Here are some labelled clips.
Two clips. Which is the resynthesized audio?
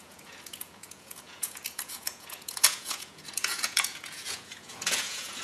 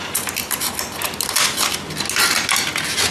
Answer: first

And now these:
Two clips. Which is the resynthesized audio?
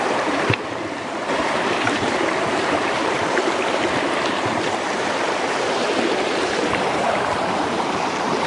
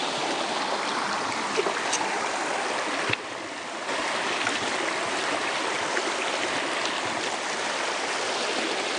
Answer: first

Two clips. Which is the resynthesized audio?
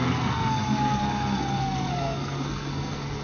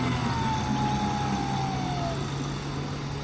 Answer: first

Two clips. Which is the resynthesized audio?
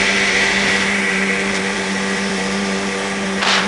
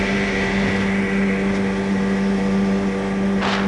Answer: first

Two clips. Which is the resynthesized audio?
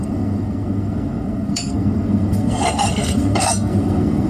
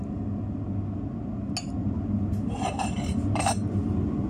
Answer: first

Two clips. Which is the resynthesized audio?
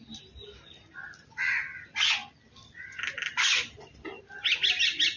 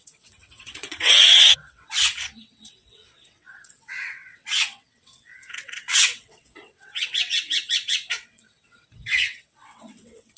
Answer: second